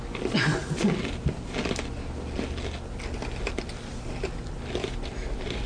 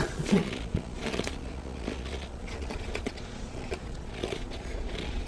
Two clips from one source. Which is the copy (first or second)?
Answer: second